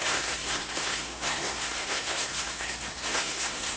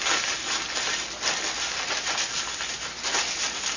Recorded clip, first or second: second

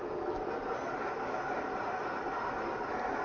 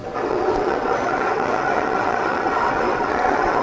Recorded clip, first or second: first